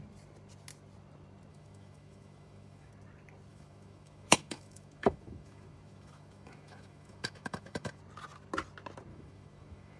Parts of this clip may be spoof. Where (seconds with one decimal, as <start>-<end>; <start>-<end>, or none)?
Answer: 1.5-2.9; 3.5-8.0; 9.1-10.0